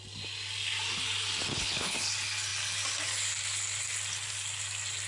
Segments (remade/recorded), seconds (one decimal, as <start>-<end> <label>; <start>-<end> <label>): 0.0-1.5 recorded; 1.5-2.1 remade; 2.1-5.1 recorded